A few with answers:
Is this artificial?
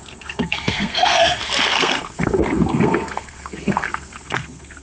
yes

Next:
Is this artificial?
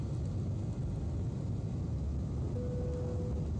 no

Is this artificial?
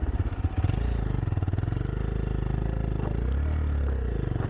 no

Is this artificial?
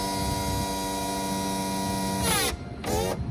no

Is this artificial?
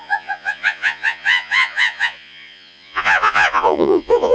yes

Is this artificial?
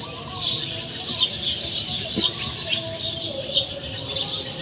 no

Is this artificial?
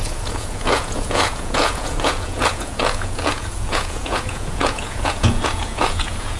yes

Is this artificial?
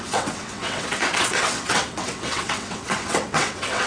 yes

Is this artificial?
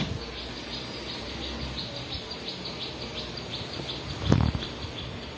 no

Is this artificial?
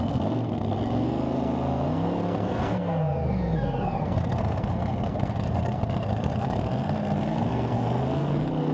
yes